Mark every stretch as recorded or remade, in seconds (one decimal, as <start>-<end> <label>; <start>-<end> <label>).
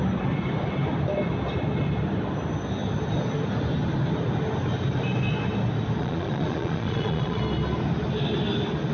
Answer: 0.0-6.0 recorded; 6.0-7.4 remade; 7.4-8.9 recorded